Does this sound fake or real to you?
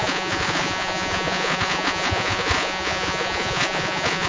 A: fake